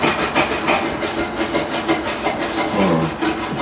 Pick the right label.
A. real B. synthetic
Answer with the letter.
A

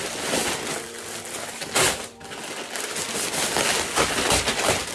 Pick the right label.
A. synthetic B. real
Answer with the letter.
B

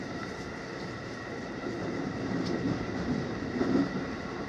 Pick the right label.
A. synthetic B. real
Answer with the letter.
A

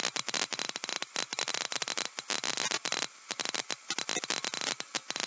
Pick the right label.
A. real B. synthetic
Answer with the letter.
A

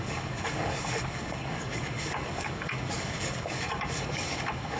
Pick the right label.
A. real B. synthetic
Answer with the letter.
B